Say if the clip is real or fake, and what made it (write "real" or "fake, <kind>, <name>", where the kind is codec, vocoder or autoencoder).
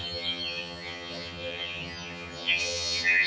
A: fake, vocoder, HiFi-GAN